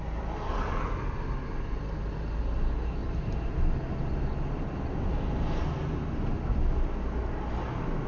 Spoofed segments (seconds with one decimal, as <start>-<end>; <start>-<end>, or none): 3.0-3.5